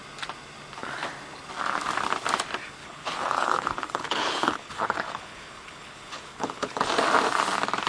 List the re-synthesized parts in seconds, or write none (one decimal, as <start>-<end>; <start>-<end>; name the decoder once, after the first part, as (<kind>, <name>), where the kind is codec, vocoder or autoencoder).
2.8-6.8 (codec, HILCodec)